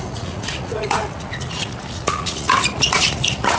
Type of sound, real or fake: fake